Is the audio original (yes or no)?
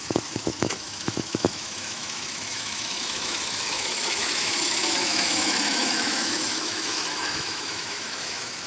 no